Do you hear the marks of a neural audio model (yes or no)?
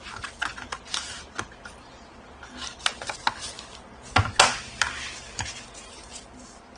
no